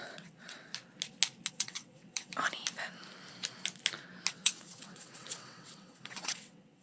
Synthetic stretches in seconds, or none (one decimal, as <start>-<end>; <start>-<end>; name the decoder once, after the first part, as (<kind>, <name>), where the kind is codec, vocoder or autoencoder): 0.0-0.7 (vocoder, WaveNeXt); 1.5-2.3; 4.3-6.8